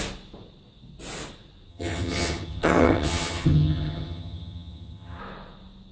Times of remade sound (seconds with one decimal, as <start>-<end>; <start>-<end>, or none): 1.7-5.2